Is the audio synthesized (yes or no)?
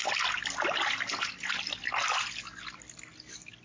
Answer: no